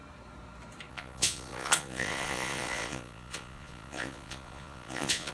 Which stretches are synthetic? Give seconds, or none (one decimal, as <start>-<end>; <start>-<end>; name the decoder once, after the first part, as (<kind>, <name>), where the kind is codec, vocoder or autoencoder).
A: 0.9-5.3 (vocoder, Vocos)

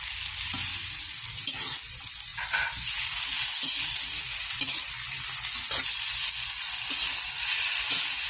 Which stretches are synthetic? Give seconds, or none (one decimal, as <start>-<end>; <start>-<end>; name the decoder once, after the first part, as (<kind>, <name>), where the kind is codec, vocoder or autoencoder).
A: none

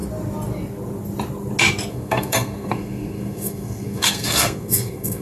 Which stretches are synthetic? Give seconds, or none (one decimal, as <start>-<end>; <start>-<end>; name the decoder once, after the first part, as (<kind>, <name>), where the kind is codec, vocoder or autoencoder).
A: 1.9-5.2 (codec, SNAC)

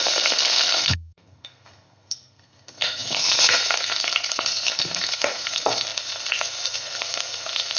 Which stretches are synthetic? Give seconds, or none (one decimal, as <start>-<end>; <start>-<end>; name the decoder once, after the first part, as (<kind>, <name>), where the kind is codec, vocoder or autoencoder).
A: 0.0-7.8 (codec, SNAC)

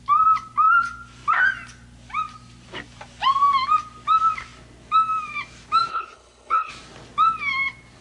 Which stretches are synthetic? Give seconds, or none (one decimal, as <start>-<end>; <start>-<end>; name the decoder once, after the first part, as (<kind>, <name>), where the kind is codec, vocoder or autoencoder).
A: 5.9-6.7 (codec, HILCodec)

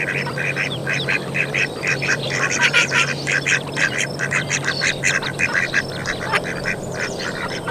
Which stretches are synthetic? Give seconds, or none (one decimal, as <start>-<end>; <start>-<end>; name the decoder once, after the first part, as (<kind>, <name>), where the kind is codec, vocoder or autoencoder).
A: 0.0-0.8 (vocoder, BigVGAN v2); 1.3-7.7

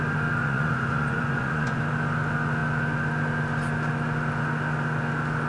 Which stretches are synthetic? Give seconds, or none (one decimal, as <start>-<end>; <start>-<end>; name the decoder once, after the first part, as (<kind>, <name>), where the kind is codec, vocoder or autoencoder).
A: 0.4-1.8 (vocoder, Vocos)